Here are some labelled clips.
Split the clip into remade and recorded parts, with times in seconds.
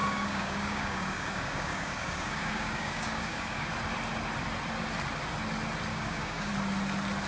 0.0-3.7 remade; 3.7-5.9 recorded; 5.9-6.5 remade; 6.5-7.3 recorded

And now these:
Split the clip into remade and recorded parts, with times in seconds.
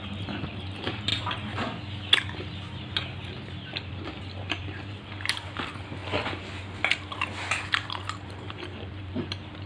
0.0-1.1 remade; 1.1-3.9 recorded; 3.9-6.0 remade; 6.0-7.7 recorded; 7.7-9.7 remade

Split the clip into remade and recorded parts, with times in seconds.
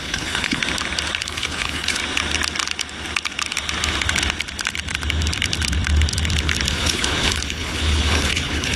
0.0-0.6 remade; 0.6-1.2 recorded; 1.2-2.0 remade; 2.0-6.7 recorded; 6.7-8.8 remade